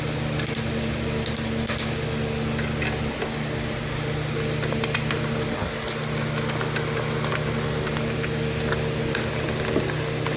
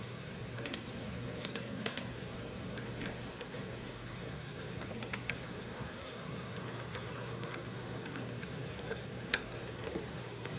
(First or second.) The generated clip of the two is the second